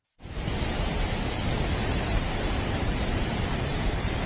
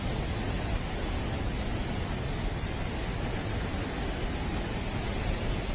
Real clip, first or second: second